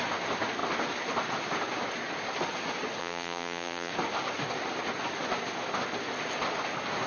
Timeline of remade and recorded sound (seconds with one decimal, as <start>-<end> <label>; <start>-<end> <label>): 0.0-3.0 recorded; 3.0-3.9 remade; 3.9-7.1 recorded